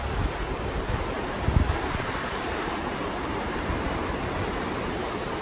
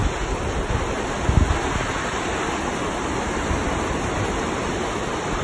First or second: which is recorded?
second